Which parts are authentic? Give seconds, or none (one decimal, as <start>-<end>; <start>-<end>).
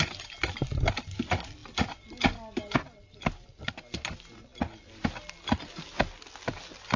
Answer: 0.0-7.0